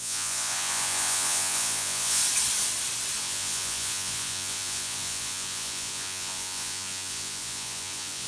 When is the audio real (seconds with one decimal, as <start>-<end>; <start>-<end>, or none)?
2.2-3.2